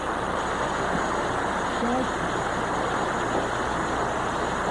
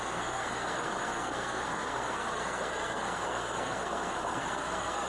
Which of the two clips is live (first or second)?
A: first